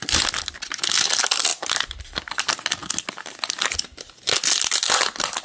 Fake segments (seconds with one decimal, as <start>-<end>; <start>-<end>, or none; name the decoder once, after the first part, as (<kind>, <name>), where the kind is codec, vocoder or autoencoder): none

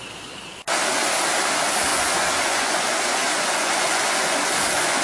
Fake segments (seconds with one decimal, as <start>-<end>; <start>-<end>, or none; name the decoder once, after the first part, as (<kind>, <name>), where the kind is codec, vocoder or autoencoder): 1.9-5.0 (vocoder, Vocos)

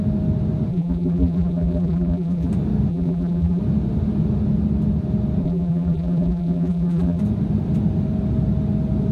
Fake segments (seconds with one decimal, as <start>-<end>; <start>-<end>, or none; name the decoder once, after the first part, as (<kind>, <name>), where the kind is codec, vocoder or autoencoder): 0.7-2.5 (vocoder, BigVGAN v2); 2.9-3.6; 5.4-7.2

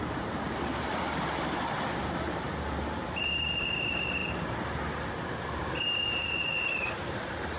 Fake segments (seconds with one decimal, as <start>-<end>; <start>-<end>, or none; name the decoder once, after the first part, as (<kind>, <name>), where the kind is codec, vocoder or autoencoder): 0.0-4.2 (vocoder, BigVGAN v2); 5.8-7.6

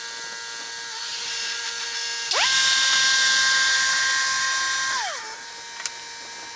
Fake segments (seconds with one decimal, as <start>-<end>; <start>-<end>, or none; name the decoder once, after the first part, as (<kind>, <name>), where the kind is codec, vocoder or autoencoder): none

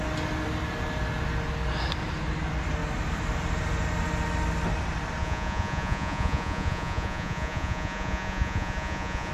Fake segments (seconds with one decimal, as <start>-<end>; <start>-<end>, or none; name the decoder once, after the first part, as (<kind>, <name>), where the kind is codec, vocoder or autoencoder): 5.2-9.3 (vocoder, Vocos)

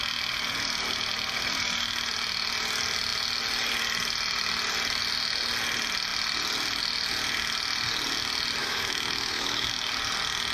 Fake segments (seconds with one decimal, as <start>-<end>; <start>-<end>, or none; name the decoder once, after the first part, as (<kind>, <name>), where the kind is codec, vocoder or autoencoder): 8.6-9.7 (autoencoder, DAC-VAE)

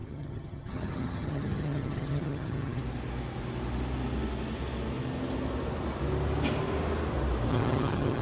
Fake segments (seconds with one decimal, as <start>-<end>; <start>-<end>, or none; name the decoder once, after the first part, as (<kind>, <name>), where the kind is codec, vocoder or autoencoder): 0.0-2.8 (vocoder, HiFi-GAN); 7.5-8.2